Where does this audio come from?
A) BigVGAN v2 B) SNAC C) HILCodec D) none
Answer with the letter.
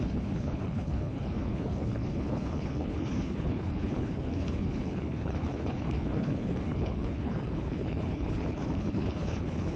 C